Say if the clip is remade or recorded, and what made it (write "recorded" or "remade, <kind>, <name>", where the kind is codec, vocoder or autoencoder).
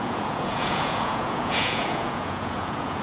remade, vocoder, Vocos